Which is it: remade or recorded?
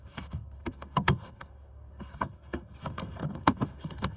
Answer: remade